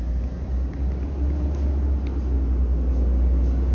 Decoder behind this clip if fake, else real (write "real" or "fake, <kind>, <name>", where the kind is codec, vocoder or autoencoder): real